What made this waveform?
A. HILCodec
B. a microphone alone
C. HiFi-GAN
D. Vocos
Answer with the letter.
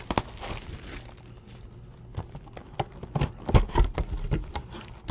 B